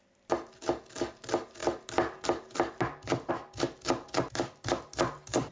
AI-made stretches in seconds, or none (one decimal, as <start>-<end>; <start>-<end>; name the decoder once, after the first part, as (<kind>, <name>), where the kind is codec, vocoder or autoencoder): none